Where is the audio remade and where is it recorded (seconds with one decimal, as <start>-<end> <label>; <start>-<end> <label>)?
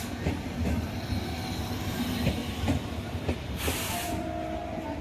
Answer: 0.0-2.4 recorded; 2.4-3.9 remade; 3.9-5.0 recorded